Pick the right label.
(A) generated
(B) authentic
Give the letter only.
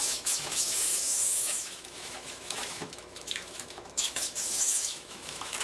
A